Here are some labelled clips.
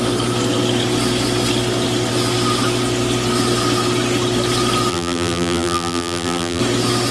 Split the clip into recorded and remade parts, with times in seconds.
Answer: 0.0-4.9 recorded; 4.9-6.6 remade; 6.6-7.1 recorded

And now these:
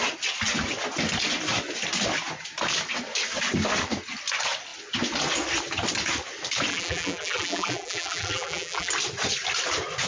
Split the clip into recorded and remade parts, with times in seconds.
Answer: 0.0-6.7 recorded; 6.7-8.9 remade; 8.9-10.1 recorded

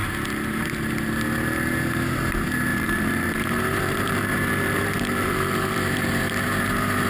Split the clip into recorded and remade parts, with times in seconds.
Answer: 0.0-2.7 recorded; 2.7-7.1 remade